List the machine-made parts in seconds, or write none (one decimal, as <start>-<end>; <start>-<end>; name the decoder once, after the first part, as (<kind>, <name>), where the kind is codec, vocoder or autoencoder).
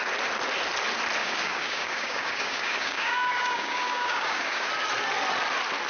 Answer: 1.2-4.7 (codec, DAC)